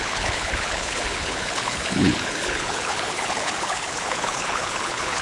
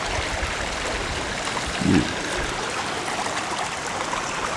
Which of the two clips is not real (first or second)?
first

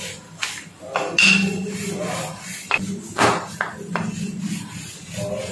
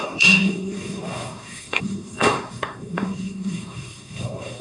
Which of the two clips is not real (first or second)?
second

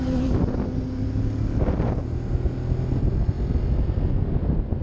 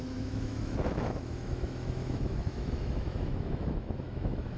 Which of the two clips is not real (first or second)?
second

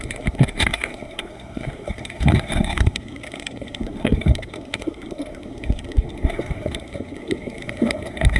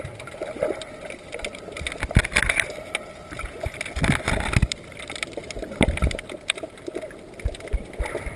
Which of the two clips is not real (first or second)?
first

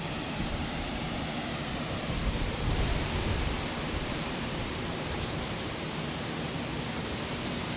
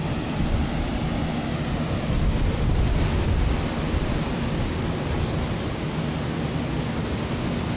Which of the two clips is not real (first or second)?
first